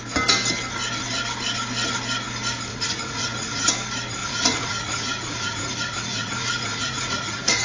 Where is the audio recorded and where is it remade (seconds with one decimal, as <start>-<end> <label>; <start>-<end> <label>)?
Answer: 0.0-2.7 recorded; 2.7-3.7 remade; 3.7-4.2 recorded; 4.2-7.6 remade